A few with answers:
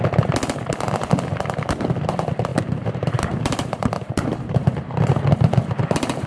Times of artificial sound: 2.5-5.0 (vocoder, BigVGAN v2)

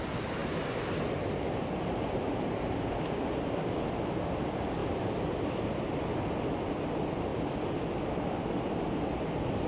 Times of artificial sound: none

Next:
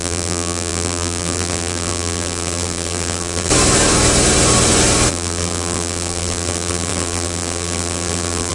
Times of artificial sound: 0.0-3.5 (vocoder, BigVGAN v2); 5.1-8.5